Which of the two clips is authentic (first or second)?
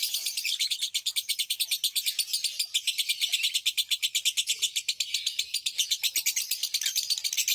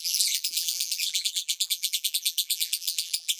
first